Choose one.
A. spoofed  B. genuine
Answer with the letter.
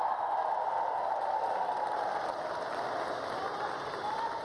B